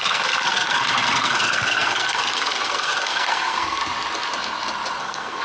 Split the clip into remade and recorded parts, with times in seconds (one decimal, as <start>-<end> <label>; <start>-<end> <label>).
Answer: 0.0-3.8 remade; 3.8-5.0 recorded; 5.0-5.4 remade

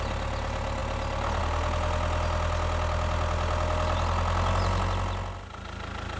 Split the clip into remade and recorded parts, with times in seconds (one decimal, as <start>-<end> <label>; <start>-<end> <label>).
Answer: 0.0-6.2 recorded

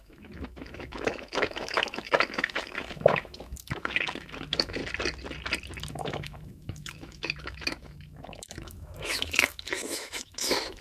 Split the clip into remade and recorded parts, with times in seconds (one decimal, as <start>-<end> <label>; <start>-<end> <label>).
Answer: 0.0-4.8 remade; 4.8-5.9 recorded; 5.9-10.8 remade

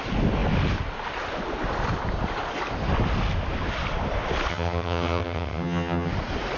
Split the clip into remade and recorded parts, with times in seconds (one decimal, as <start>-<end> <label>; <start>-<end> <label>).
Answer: 0.0-4.5 recorded; 4.5-6.1 remade; 6.1-6.6 recorded

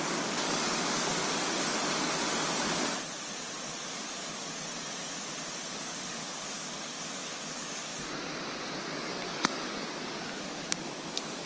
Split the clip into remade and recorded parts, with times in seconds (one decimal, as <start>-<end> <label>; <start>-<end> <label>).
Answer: 0.0-1.2 remade; 1.2-3.8 recorded; 3.8-4.4 remade; 4.4-5.7 recorded; 5.7-7.9 remade; 7.9-8.8 recorded; 8.8-11.5 remade

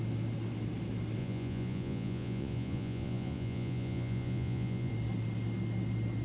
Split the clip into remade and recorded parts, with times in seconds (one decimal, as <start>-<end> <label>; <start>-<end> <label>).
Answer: 0.0-1.2 recorded; 1.2-4.9 remade; 4.9-6.2 recorded

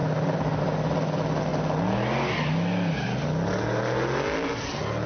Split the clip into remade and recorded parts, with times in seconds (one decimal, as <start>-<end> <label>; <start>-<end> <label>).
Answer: 0.0-5.1 recorded